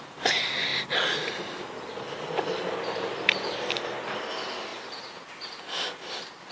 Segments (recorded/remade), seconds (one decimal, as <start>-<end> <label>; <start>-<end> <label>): 0.0-6.5 recorded